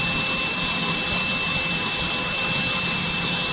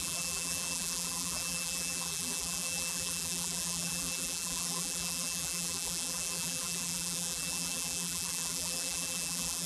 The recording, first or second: first